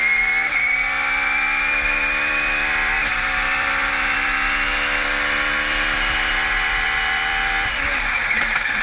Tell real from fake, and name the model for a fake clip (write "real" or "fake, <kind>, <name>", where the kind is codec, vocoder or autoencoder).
fake, vocoder, BigVGAN v2